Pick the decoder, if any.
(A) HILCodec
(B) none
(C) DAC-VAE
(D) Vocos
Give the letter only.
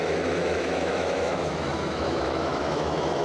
C